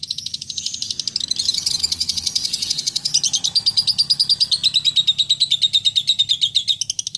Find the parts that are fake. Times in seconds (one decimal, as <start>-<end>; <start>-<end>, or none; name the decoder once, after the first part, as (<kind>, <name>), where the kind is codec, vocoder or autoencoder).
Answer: 1.5-3.1 (vocoder, Vocos)

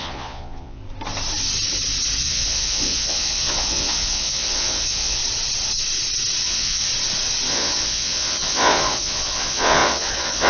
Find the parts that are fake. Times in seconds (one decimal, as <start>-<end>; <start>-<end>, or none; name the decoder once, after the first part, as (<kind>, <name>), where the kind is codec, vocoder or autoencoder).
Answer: 0.0-0.8 (vocoder, Vocos); 2.2-5.2; 6.4-6.9; 7.5-10.5